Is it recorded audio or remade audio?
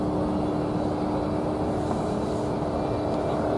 recorded